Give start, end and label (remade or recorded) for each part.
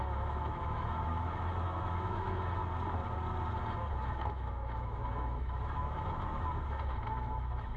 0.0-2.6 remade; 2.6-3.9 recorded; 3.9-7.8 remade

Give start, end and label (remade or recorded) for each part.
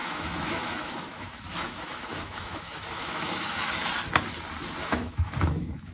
0.0-3.8 remade; 3.8-4.8 recorded; 4.8-5.9 remade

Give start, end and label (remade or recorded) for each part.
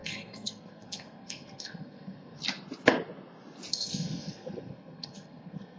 0.0-2.4 remade; 2.4-3.7 recorded; 3.7-5.8 remade